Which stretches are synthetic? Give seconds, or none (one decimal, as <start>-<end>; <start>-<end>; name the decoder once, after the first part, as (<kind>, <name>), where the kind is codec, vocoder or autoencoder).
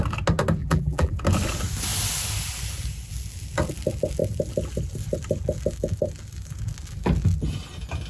0.6-1.1 (vocoder, BigVGAN v2)